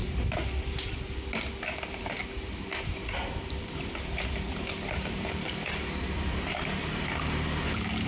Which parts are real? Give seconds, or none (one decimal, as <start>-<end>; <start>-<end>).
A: 0.0-8.1